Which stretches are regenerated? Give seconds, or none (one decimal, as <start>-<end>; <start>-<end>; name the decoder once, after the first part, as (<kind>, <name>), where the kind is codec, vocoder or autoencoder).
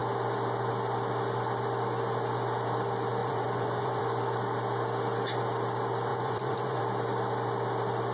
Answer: 3.2-4.0 (vocoder, Vocos); 6.1-6.8